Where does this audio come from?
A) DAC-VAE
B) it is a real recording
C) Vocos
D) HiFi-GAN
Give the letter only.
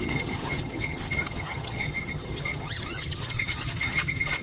D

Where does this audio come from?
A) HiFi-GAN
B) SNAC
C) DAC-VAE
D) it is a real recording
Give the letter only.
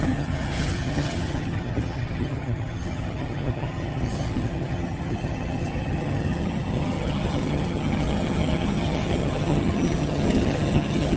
A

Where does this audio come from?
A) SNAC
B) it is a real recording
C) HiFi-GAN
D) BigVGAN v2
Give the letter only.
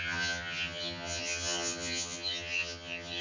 C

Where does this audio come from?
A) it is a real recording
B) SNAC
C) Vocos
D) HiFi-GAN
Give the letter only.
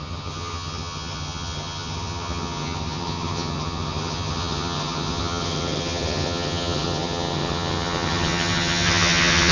D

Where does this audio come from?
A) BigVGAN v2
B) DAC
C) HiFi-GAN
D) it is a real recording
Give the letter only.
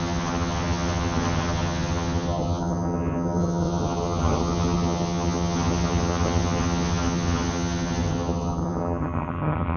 C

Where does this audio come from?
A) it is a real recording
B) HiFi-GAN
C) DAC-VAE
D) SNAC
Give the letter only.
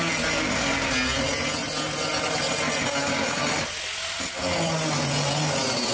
A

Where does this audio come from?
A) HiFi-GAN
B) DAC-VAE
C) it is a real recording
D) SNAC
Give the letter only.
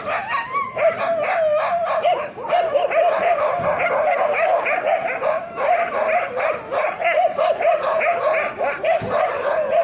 C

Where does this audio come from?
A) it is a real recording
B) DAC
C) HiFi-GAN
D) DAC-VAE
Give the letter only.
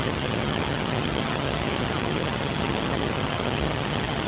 C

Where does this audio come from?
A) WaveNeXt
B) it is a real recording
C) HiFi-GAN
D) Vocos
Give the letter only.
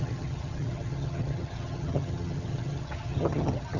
C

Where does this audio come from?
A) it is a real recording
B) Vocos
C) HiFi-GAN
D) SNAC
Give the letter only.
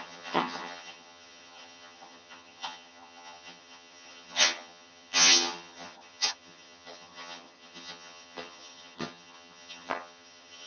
C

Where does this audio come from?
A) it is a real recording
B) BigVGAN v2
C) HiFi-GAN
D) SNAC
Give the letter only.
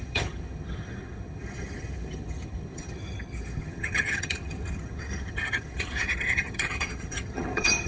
C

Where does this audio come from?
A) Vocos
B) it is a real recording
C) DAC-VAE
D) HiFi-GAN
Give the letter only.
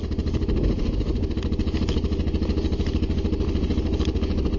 B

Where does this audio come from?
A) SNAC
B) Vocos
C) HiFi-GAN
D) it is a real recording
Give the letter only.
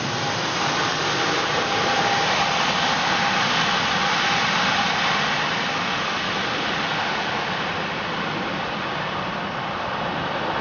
D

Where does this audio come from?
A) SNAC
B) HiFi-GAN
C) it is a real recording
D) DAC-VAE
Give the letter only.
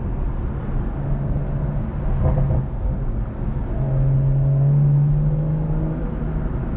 C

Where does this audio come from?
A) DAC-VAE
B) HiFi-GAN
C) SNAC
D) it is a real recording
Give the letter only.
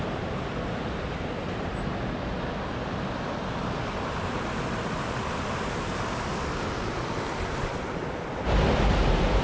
D